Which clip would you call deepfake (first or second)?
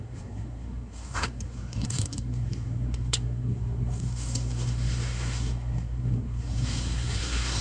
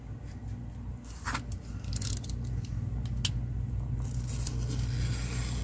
first